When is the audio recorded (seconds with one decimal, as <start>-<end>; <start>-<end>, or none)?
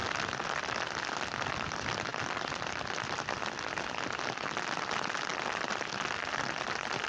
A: 0.0-2.1; 3.9-5.3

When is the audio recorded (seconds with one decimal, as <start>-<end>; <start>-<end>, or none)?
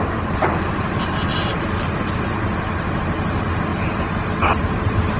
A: 0.0-3.7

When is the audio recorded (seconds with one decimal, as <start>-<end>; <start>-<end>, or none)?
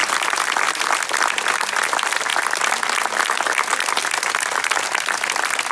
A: 0.0-5.7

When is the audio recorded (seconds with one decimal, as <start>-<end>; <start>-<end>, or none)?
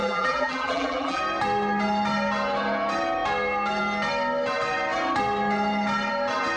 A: 1.2-6.6